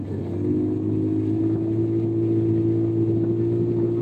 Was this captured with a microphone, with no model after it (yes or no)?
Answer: yes